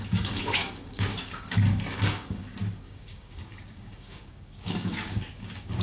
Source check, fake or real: fake